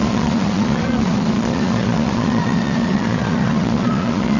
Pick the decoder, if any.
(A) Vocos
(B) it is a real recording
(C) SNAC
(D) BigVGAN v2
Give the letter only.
A